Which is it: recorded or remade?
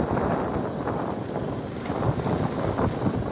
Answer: recorded